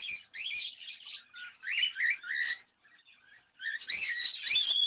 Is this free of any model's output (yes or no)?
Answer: yes